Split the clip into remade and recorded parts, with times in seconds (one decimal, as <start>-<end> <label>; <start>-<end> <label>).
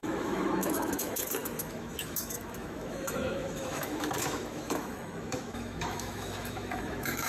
0.0-7.3 remade